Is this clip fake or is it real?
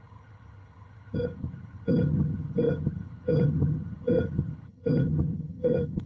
fake